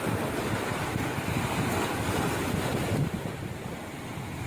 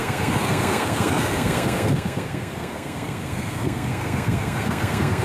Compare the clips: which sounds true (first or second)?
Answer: first